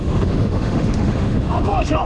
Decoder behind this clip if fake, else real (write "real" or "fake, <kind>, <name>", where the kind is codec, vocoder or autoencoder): fake, autoencoder, DAC-VAE